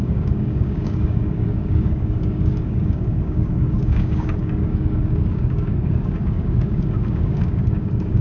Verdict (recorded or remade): remade